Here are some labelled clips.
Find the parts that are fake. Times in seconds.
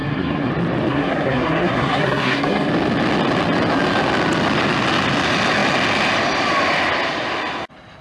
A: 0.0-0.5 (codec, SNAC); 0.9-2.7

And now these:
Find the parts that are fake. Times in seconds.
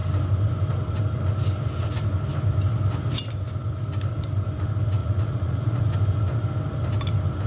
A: 5.0-5.8 (vocoder, Vocos)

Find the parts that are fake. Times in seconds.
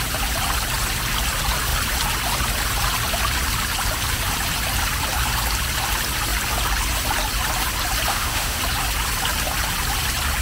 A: 8.1-8.6 (autoencoder, DAC-VAE)